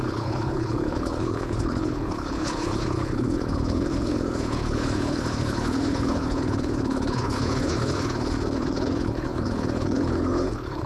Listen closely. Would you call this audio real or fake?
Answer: fake